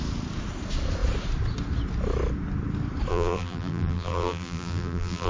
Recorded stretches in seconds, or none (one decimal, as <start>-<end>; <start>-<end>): 0.0-3.1